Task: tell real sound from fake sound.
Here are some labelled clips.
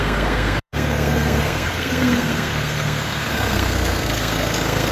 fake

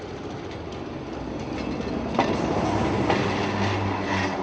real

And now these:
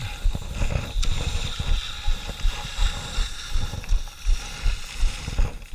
real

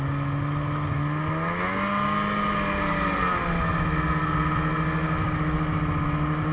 real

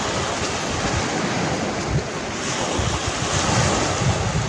real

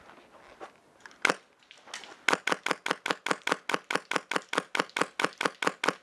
real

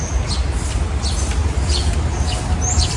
real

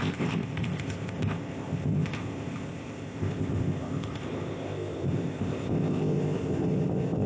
fake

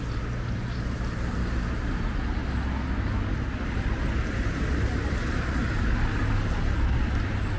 real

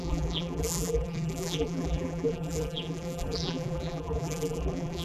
fake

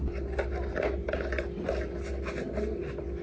real